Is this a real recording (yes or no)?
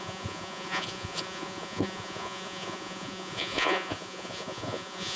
no